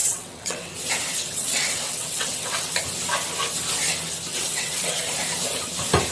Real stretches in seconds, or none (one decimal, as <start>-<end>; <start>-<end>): 0.7-1.1; 2.7-4.3; 5.1-6.1